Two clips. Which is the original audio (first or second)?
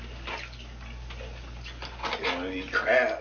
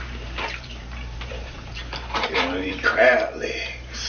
first